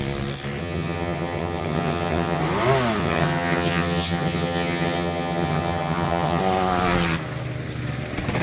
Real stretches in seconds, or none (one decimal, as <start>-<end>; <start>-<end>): 0.0-0.6; 2.4-3.0; 6.4-8.4